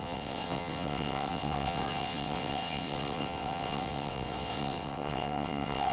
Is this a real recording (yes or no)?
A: no